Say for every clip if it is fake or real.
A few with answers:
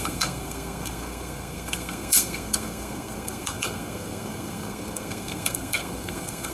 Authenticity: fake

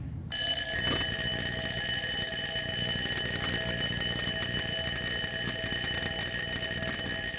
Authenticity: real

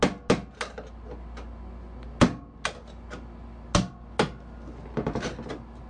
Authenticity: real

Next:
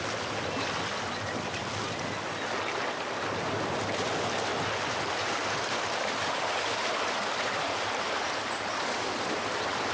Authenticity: real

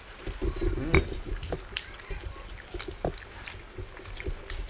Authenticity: real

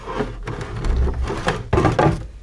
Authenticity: real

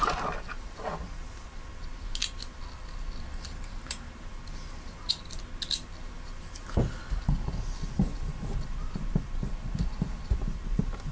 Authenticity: real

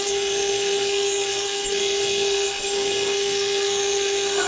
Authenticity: fake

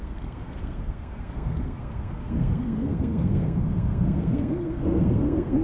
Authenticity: fake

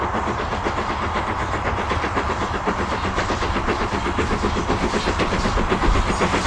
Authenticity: real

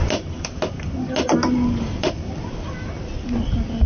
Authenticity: real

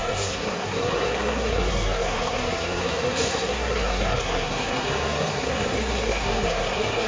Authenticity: fake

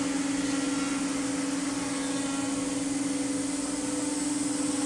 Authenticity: real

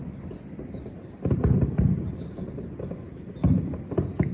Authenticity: real